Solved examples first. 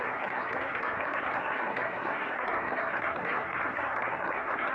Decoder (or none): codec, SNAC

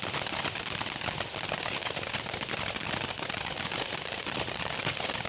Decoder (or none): none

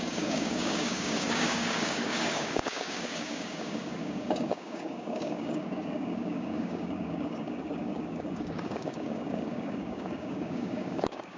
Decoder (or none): codec, DAC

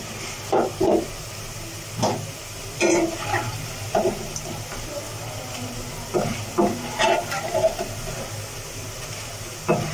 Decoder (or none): none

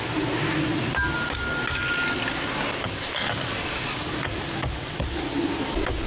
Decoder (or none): none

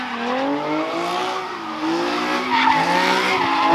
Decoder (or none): none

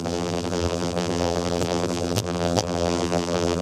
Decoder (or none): vocoder, BigVGAN v2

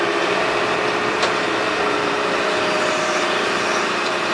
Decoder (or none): vocoder, BigVGAN v2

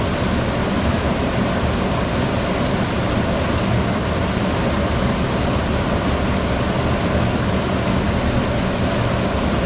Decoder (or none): none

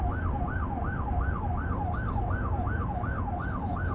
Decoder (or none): none